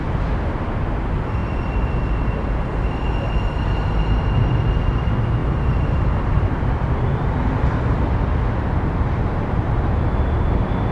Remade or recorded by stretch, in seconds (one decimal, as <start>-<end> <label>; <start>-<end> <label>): 0.0-1.4 recorded; 1.4-2.7 remade; 2.7-5.4 recorded; 5.4-7.1 remade; 7.1-10.9 recorded